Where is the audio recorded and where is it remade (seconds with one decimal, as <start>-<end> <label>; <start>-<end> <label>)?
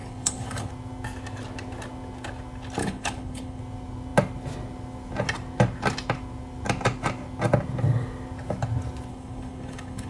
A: 0.0-0.7 remade; 0.7-2.8 recorded; 2.8-3.6 remade; 3.6-9.1 recorded; 9.1-10.1 remade